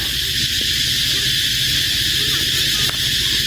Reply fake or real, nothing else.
real